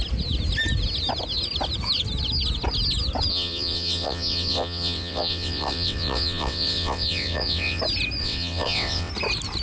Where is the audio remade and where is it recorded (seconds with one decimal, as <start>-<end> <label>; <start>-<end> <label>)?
0.0-3.3 recorded; 3.3-7.8 remade; 7.8-8.2 recorded; 8.2-9.1 remade; 9.1-9.6 recorded